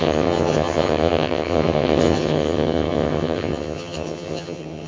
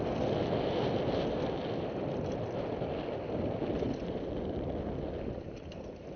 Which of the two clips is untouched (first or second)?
second